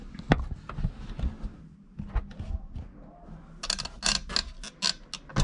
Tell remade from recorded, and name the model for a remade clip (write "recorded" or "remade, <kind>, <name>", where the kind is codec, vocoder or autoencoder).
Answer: recorded